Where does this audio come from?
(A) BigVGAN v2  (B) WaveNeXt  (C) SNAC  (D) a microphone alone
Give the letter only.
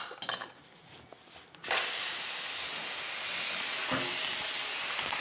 D